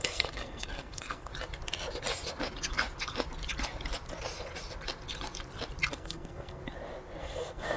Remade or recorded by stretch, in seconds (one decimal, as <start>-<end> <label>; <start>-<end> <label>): 0.0-1.3 remade; 1.3-5.9 recorded; 5.9-6.6 remade; 6.6-7.2 recorded; 7.2-7.8 remade